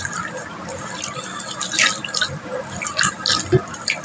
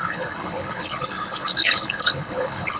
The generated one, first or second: second